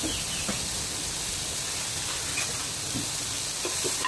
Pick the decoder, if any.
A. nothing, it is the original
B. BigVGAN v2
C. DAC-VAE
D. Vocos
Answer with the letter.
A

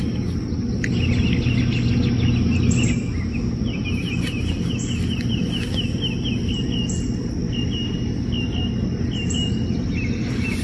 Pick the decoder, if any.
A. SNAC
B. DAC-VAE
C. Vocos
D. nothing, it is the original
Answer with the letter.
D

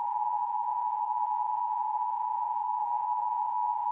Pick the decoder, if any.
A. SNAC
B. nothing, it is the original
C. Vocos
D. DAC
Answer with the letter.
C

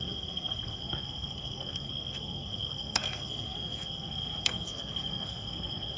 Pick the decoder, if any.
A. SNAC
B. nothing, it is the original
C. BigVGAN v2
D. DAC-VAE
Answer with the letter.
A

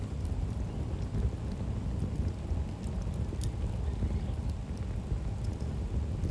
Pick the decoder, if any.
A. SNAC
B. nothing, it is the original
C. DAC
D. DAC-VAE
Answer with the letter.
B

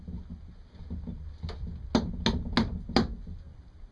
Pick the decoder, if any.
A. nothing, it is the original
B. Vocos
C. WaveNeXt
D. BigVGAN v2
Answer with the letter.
A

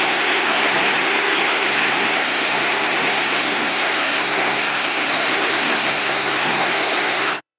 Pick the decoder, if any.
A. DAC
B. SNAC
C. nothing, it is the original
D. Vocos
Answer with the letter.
B